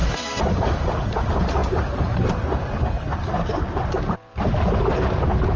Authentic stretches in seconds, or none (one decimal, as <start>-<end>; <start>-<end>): 0.0-5.6